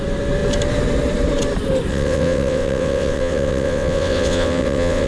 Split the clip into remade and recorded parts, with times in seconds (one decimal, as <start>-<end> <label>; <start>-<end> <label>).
0.0-1.9 recorded; 1.9-5.1 remade

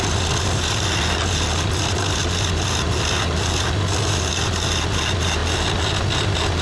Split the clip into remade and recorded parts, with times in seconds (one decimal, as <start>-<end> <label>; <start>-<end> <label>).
0.0-6.6 recorded